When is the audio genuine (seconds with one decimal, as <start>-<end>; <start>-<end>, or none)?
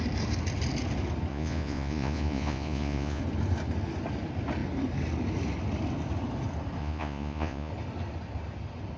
0.0-1.3; 3.2-6.8; 7.7-9.0